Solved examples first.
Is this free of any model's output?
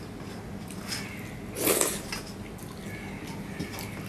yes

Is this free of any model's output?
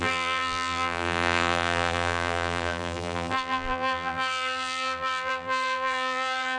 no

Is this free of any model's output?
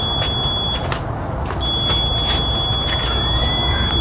yes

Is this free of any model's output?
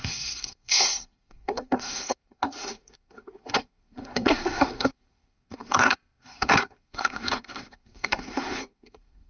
no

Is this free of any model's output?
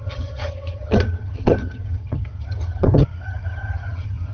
no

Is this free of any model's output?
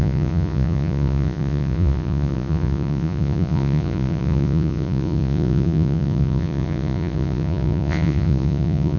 no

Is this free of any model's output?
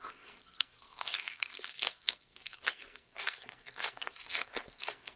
no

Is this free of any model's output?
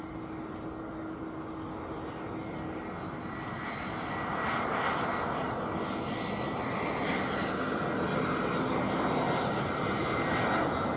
yes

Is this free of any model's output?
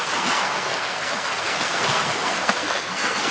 no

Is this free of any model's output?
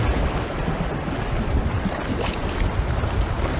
yes